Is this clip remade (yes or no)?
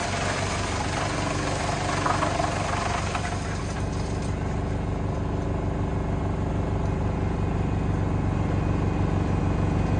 no